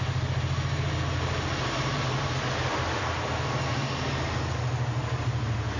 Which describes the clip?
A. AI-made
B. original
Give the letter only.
B